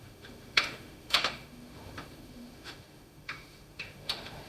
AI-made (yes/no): yes